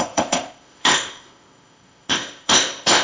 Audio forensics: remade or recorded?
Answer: remade